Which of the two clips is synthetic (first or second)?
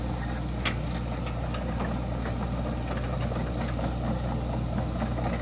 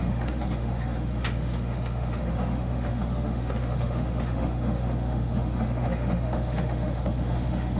second